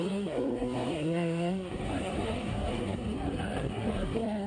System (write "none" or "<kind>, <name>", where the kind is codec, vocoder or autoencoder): codec, SNAC